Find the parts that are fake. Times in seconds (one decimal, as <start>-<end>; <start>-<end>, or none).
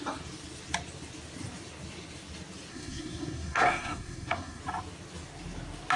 2.7-4.6